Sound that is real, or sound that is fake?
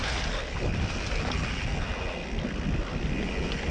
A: real